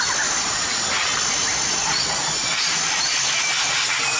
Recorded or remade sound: recorded